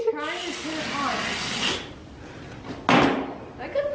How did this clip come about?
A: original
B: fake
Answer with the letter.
A